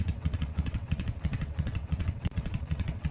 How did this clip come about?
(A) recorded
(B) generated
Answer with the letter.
B